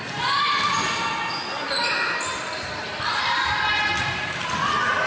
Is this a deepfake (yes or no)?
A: no